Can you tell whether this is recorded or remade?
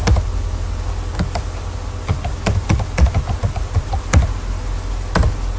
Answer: recorded